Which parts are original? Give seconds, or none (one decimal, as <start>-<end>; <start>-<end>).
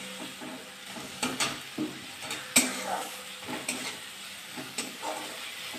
0.0-0.8; 1.6-2.7; 3.2-4.4; 5.0-5.8